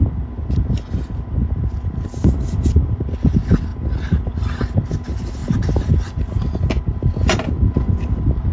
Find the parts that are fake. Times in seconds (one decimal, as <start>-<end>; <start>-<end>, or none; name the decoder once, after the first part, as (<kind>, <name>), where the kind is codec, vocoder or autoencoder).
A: none